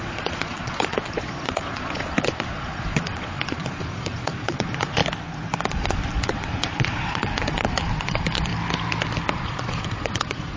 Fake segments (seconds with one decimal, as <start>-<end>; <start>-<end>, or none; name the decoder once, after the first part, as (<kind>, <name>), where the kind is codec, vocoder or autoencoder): 0.0-5.0 (vocoder, Vocos); 5.7-8.5; 9.3-10.6